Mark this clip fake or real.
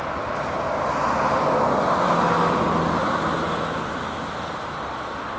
real